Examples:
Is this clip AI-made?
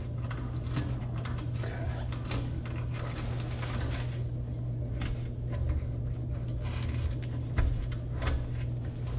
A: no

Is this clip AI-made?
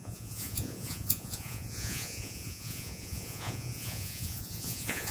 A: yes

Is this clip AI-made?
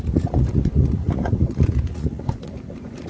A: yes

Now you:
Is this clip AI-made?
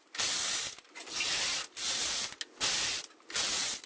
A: no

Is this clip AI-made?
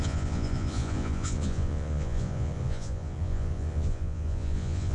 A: yes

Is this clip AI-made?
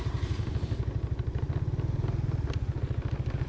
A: no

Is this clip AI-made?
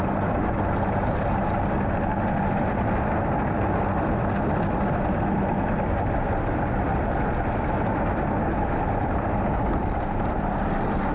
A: no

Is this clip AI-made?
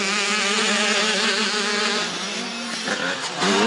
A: no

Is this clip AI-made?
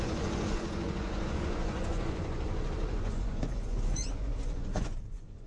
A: yes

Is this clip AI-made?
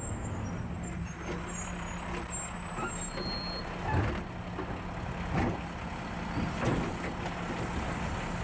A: no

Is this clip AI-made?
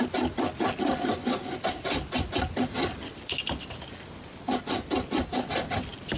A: no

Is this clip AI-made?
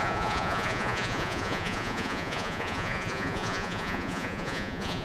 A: yes